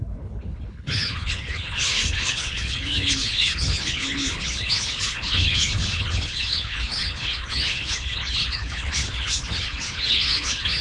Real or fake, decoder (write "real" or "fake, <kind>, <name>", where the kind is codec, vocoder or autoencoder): fake, codec, HILCodec